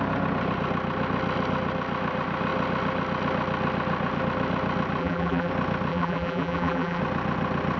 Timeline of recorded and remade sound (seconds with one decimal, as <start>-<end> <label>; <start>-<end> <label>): 0.0-5.0 recorded; 5.0-5.5 remade; 5.5-5.9 recorded; 5.9-7.0 remade; 7.0-7.8 recorded